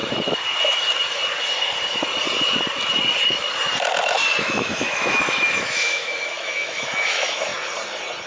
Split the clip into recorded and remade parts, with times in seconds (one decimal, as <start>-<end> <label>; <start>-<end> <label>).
0.0-4.4 recorded; 4.4-7.5 remade; 7.5-8.3 recorded